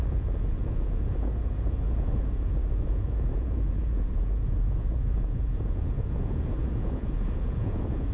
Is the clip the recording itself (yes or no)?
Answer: no